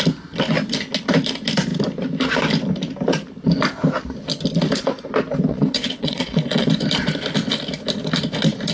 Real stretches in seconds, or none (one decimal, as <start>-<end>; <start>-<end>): 0.0-5.5; 6.7-8.7